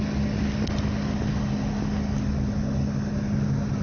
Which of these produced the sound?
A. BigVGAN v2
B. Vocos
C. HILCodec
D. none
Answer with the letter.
D